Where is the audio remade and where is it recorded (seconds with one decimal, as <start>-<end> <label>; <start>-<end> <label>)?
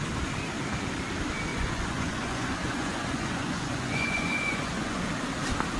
0.0-1.5 recorded; 1.5-5.0 remade; 5.0-5.8 recorded